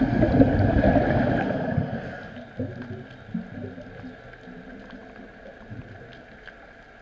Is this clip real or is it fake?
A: real